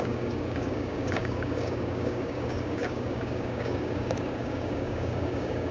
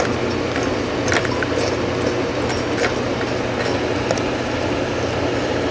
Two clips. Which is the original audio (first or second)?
second